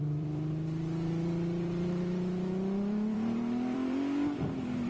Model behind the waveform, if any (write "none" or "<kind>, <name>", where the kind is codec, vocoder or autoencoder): vocoder, BigVGAN v2